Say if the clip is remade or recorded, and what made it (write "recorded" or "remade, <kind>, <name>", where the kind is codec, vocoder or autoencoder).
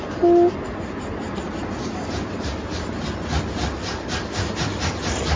recorded